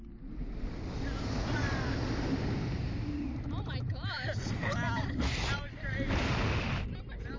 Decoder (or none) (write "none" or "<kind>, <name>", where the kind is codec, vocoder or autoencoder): none